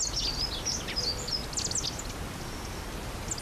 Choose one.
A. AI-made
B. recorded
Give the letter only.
B